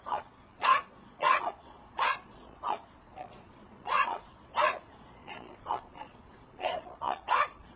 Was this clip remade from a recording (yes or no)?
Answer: yes